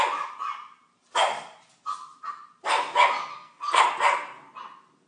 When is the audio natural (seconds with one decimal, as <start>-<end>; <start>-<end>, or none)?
0.0-3.3; 3.8-5.1